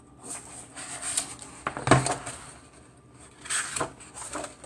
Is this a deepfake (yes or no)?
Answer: no